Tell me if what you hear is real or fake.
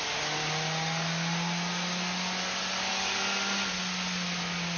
real